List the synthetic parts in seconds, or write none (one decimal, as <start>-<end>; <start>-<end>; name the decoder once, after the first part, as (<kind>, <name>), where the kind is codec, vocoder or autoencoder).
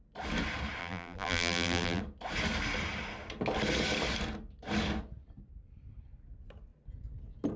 0.8-2.0 (vocoder, BigVGAN v2)